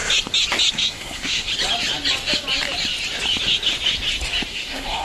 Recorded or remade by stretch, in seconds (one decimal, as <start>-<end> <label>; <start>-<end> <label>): 0.0-0.7 recorded; 0.7-1.5 remade; 1.5-4.5 recorded; 4.5-5.0 remade